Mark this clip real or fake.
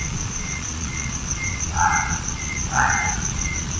fake